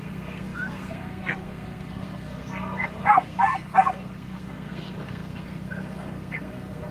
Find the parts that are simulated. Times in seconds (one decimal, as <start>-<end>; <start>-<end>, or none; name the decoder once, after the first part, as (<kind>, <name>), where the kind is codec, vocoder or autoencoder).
0.0-6.9 (codec, SNAC)